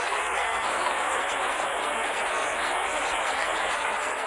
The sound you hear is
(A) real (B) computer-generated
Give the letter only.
B